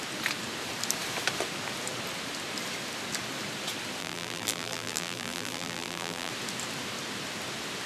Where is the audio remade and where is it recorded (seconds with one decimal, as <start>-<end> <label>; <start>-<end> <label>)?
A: 0.0-4.0 recorded; 4.0-6.3 remade; 6.3-7.9 recorded